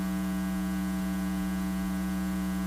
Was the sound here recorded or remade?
remade